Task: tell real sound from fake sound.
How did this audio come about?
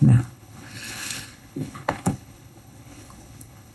fake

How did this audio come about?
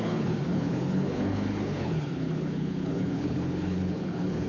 fake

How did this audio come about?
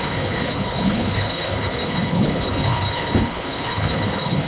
fake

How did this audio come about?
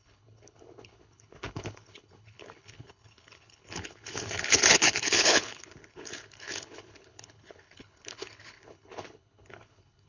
fake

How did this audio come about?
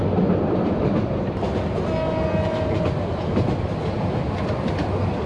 real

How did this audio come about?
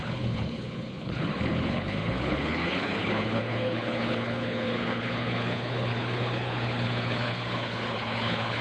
fake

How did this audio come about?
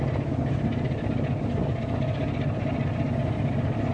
real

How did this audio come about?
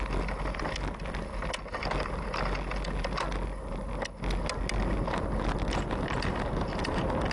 real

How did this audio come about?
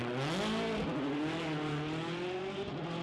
real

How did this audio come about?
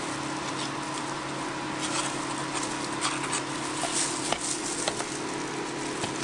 real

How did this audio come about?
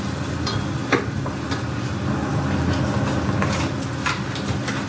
real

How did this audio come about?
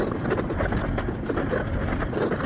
real